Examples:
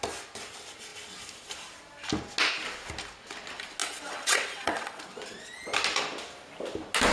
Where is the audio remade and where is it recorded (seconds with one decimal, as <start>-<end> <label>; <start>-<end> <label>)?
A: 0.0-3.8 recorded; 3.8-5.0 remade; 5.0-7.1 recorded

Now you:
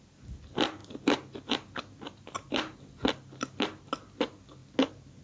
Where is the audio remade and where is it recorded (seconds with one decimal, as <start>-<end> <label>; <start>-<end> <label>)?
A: 0.0-5.2 recorded

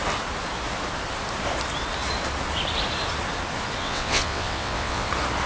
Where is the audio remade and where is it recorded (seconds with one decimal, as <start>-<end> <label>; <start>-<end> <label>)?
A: 0.0-3.8 recorded; 3.8-5.1 remade; 5.1-5.5 recorded

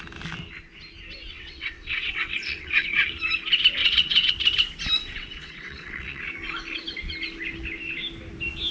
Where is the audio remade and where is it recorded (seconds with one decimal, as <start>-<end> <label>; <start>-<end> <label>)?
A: 0.0-1.3 recorded; 1.3-3.1 remade; 3.1-3.8 recorded; 3.8-4.3 remade; 4.3-5.0 recorded; 5.0-6.2 remade; 6.2-8.7 recorded

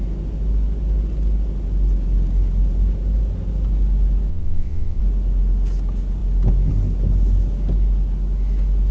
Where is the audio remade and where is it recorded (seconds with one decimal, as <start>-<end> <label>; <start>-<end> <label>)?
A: 0.0-4.3 recorded; 4.3-5.0 remade; 5.0-8.9 recorded

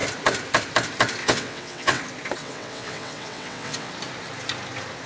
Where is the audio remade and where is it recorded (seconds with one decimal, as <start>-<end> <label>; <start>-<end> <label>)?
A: 0.0-1.2 recorded; 1.2-2.0 remade; 2.0-2.4 recorded; 2.4-3.9 remade; 3.9-5.1 recorded

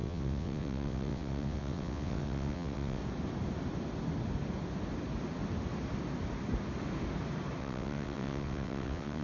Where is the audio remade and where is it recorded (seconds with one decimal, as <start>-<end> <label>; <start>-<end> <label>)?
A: 0.0-3.0 remade; 3.0-7.6 recorded; 7.6-9.2 remade

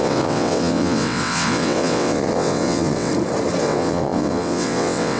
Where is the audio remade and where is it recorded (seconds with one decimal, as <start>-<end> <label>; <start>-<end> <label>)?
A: 0.0-3.1 remade; 3.1-3.6 recorded; 3.6-5.2 remade